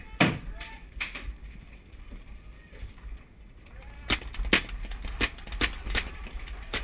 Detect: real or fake real